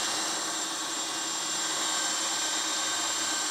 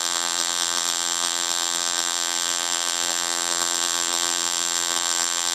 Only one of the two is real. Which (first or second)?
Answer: first